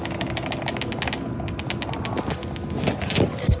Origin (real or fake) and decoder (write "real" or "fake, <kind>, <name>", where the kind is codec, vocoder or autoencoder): real